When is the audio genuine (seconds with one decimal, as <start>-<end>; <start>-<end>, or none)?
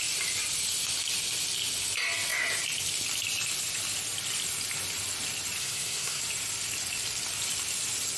0.0-5.6; 6.2-8.2